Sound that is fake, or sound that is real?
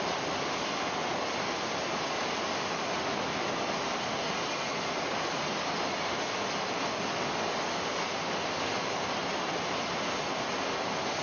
real